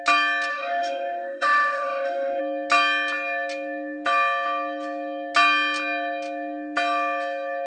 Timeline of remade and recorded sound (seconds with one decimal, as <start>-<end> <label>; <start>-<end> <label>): 0.0-0.5 recorded; 0.5-2.4 remade; 2.4-7.7 recorded